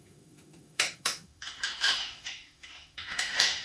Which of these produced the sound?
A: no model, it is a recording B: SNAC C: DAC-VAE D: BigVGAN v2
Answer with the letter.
C